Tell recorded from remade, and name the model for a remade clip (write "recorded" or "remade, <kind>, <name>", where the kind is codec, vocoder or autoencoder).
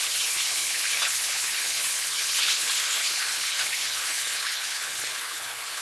remade, codec, HILCodec